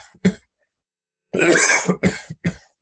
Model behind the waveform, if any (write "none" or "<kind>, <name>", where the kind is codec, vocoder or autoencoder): vocoder, WaveNeXt